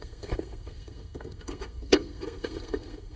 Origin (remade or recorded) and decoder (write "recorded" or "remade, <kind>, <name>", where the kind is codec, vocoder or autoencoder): remade, codec, SNAC